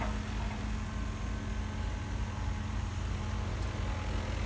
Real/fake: real